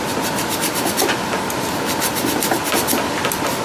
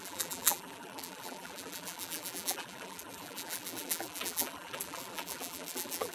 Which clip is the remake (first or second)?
second